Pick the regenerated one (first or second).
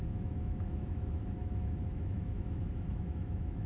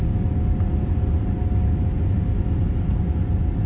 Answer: first